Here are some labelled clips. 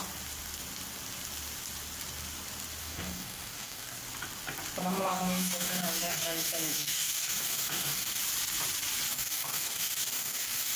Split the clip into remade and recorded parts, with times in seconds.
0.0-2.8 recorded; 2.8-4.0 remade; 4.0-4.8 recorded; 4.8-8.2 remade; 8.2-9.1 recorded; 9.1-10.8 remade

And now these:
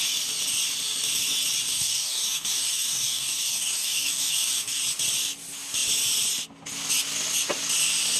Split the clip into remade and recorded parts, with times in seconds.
0.0-1.7 recorded; 1.7-4.8 remade; 4.8-8.2 recorded

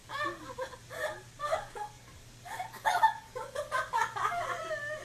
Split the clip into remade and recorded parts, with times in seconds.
0.0-0.6 remade; 0.6-1.4 recorded; 1.4-4.4 remade; 4.4-5.0 recorded